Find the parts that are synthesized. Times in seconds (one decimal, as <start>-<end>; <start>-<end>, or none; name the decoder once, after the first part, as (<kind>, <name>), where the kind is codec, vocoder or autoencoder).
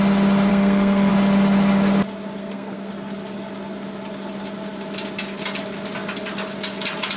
0.5-1.1 (codec, SNAC); 2.4-2.9